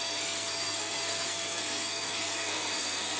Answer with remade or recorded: remade